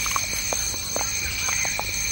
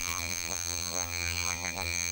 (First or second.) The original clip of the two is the first